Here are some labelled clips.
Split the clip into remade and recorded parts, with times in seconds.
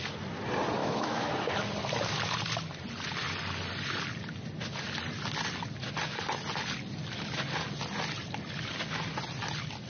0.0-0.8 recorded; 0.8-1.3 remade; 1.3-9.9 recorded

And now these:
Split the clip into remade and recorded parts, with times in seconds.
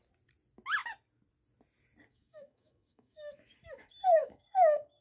0.0-2.1 recorded; 2.1-5.0 remade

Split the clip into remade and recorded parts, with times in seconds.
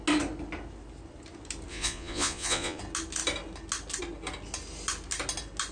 0.0-1.7 recorded; 1.7-2.8 remade; 2.8-5.7 recorded